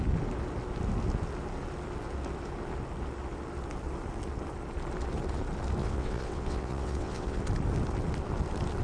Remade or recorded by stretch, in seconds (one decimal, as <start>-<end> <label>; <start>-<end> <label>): 0.0-5.8 recorded; 5.8-7.4 remade; 7.4-8.8 recorded